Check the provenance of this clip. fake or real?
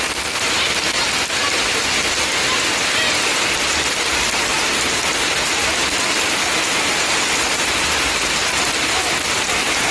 real